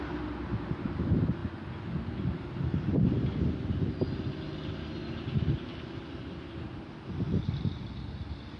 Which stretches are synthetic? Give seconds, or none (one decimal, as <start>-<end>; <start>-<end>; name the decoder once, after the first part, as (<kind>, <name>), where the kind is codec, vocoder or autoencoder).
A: none